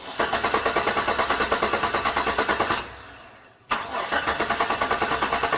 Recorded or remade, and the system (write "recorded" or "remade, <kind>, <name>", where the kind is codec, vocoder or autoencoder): recorded